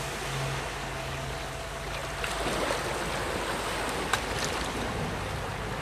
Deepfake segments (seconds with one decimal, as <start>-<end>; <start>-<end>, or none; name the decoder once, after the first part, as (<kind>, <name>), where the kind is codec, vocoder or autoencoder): 0.8-1.3 (codec, DAC)